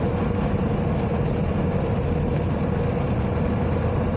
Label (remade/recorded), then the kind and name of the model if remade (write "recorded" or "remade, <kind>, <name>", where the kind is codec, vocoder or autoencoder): recorded